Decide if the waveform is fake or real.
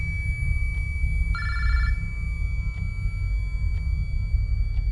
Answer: real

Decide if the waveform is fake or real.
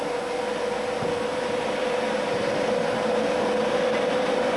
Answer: real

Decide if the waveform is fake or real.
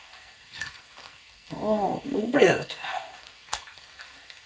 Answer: fake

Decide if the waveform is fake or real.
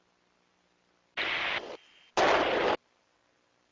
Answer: real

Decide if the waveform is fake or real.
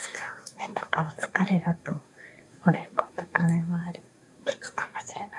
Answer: fake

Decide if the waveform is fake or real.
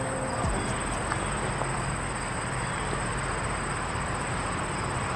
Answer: real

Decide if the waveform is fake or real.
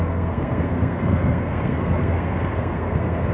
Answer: fake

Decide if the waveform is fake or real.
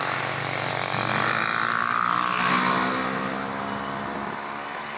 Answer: real